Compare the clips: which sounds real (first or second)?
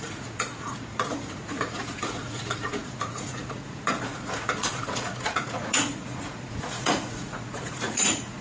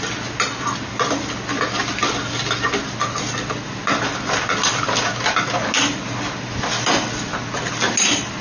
second